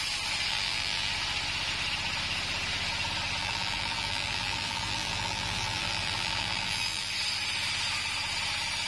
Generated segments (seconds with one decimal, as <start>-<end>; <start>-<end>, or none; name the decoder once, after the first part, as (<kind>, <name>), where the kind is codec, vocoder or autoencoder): 0.5-1.1 (vocoder, BigVGAN v2); 3.4-7.1